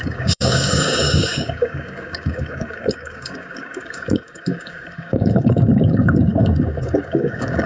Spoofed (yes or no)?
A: yes